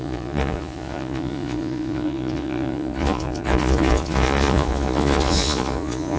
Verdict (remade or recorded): remade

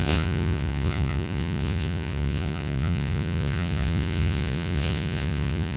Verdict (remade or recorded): remade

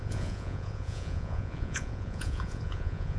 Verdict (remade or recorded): remade